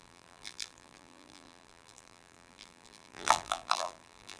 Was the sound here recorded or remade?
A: remade